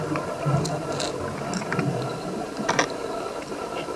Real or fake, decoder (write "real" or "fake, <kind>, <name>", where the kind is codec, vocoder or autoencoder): real